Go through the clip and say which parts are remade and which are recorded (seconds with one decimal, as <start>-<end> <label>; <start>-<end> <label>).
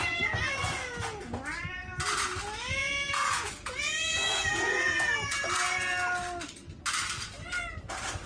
0.0-2.8 recorded; 2.8-5.5 remade; 5.5-8.3 recorded